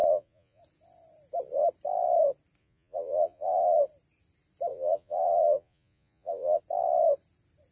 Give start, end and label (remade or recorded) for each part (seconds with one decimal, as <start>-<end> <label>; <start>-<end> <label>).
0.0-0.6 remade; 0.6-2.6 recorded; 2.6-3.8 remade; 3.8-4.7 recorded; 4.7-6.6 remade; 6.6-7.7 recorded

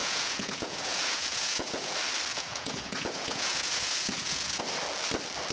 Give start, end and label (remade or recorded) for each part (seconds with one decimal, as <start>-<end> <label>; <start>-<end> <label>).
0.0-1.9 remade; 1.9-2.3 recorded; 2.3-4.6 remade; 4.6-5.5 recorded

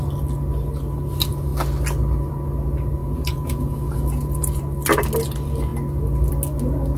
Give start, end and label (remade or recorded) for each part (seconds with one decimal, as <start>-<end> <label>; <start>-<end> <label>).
0.0-3.0 recorded; 3.0-4.6 remade; 4.6-7.0 recorded

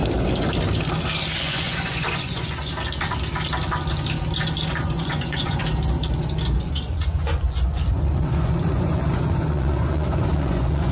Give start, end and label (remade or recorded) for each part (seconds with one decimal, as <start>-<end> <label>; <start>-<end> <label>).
0.0-1.4 recorded; 1.4-2.7 remade; 2.7-4.7 recorded; 4.7-5.6 remade; 5.6-6.6 recorded; 6.6-10.9 remade

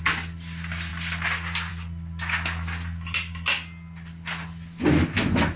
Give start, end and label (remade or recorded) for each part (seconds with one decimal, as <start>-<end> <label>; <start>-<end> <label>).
0.0-5.6 recorded